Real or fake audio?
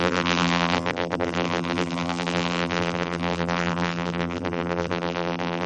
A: fake